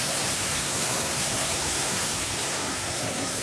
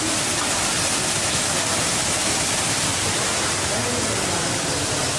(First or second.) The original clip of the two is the second